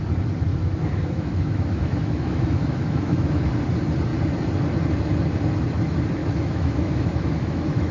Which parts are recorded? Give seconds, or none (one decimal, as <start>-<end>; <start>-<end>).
0.0-0.5; 3.5-6.2